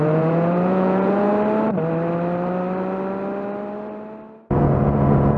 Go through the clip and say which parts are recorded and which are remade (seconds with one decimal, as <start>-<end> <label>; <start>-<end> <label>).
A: 0.0-1.3 remade; 1.3-4.5 recorded; 4.5-5.4 remade